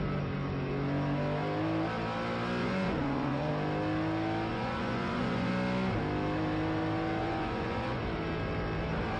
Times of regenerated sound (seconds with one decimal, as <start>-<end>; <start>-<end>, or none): 2.6-3.5; 4.5-5.5; 7.2-8.0